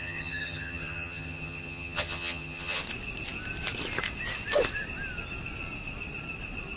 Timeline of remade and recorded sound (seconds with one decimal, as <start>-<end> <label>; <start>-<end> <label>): 0.0-2.8 remade; 2.8-6.8 recorded